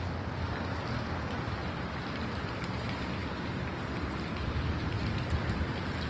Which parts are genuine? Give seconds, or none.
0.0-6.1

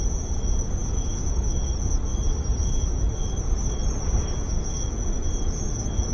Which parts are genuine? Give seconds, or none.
2.1-2.6

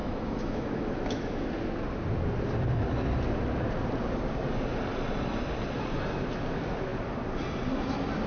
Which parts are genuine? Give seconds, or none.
1.5-8.3

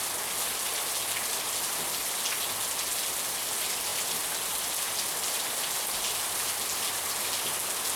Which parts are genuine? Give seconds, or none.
0.0-8.0